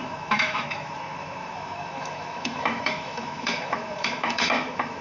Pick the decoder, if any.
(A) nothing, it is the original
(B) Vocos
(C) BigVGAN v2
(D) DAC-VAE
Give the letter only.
D